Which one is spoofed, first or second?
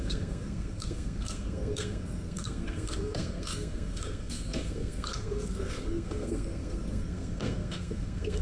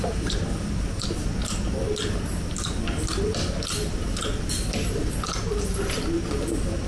first